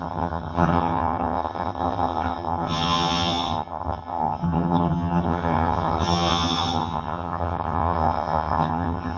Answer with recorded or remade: remade